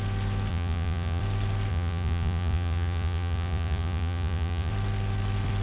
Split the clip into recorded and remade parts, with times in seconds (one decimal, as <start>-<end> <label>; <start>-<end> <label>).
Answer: 0.0-0.5 recorded; 0.5-1.2 remade; 1.2-1.7 recorded; 1.7-4.7 remade; 4.7-5.6 recorded